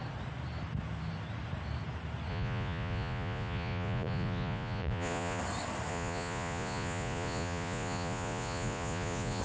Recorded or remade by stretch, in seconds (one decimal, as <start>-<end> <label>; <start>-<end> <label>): 0.0-2.3 recorded; 2.3-5.4 remade; 5.4-5.9 recorded; 5.9-9.4 remade